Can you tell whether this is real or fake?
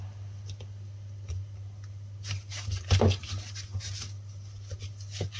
real